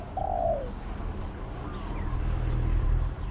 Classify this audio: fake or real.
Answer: real